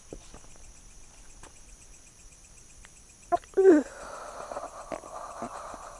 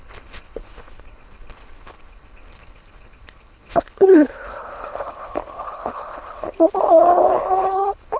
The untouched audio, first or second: first